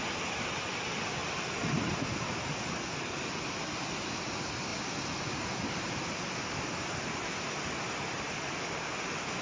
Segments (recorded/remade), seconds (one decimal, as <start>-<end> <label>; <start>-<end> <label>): 0.0-9.4 recorded